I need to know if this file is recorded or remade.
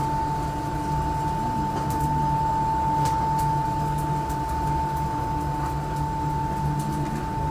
recorded